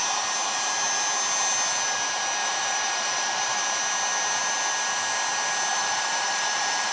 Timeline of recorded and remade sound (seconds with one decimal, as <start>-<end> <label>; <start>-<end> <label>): 0.0-2.4 recorded; 2.4-3.6 remade; 3.6-5.7 recorded; 5.7-6.9 remade